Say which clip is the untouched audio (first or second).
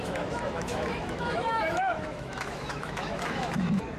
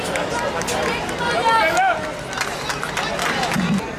second